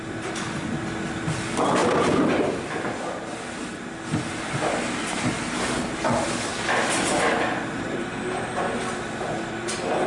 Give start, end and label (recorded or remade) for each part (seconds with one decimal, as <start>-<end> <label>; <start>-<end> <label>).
0.0-10.1 recorded